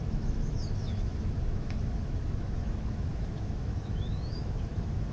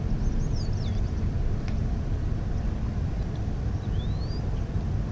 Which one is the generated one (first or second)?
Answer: first